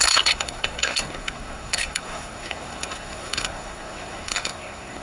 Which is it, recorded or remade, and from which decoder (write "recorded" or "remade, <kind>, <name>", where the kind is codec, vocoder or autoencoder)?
remade, codec, SNAC